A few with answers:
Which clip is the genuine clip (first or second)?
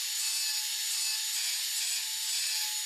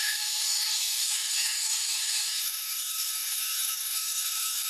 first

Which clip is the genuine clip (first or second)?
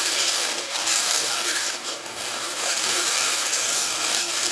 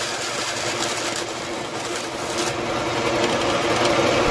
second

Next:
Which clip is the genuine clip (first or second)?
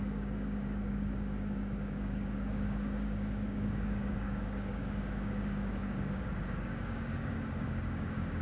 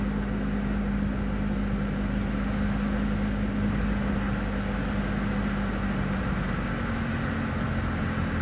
second